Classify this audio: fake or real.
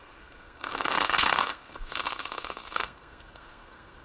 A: fake